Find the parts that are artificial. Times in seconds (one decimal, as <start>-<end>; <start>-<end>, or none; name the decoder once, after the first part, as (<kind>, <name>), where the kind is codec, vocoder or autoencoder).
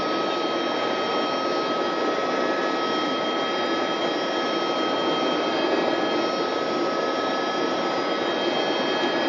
none